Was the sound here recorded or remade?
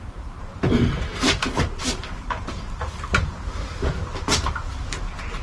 remade